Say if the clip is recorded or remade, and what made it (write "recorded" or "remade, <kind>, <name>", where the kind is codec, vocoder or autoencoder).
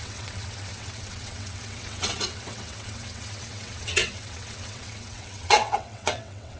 remade, vocoder, WaveNeXt